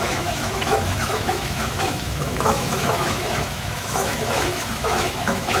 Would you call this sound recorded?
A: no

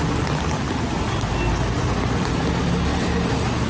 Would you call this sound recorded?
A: yes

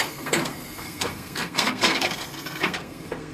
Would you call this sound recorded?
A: no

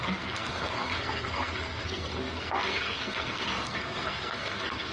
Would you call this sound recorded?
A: no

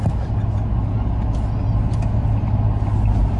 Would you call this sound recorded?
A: yes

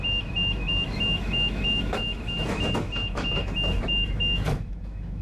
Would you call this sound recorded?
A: no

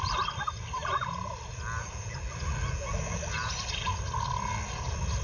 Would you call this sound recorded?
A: yes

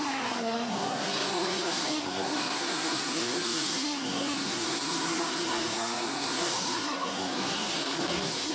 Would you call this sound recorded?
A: no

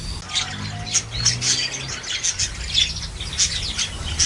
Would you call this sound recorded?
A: yes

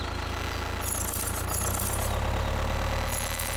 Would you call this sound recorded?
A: yes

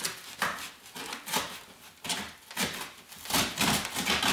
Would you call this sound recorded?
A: yes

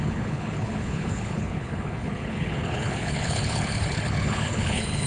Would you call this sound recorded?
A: no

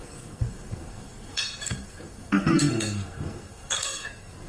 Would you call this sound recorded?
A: no